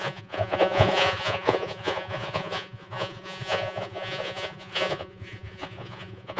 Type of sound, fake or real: fake